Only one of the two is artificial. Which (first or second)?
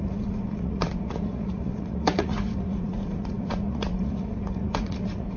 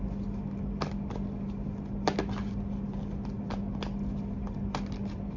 first